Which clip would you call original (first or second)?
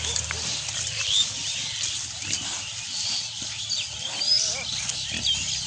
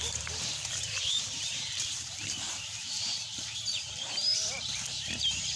first